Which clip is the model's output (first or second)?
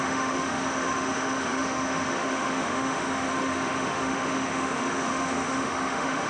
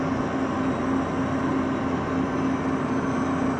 first